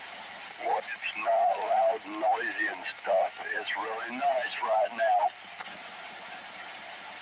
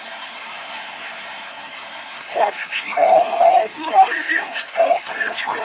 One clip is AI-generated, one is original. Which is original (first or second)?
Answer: first